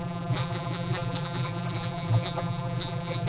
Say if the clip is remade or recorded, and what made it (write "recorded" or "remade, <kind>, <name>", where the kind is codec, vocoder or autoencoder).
remade, vocoder, BigVGAN v2